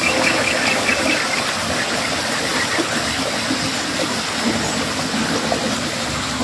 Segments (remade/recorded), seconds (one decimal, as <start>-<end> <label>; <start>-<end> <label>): 0.0-1.1 remade; 1.1-6.4 recorded